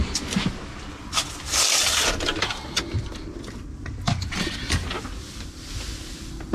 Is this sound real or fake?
real